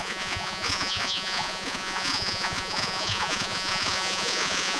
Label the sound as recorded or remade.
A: remade